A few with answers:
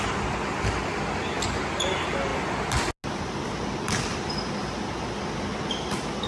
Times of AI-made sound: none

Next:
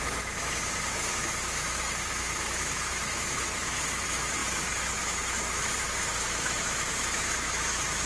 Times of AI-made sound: 0.0-8.1 (autoencoder, DAC-VAE)

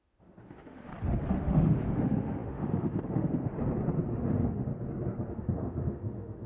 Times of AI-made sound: 0.0-0.9 (autoencoder, DAC-VAE); 1.4-3.5; 4.1-4.7; 5.3-6.5

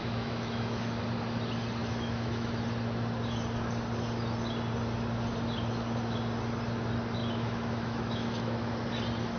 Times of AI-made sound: 0.0-1.0 (autoencoder, DAC-VAE); 1.8-2.5; 7.2-8.7

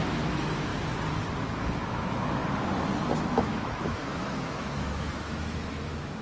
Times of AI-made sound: 0.0-0.7 (autoencoder, DAC-VAE); 1.4-2.4; 3.3-6.2

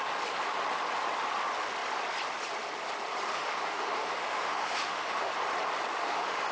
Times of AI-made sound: 3.3-5.3 (autoencoder, DAC-VAE); 6.0-6.5

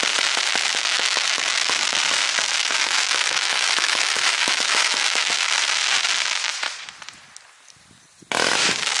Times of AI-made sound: 0.7-2.0 (autoencoder, DAC-VAE); 2.6-5.3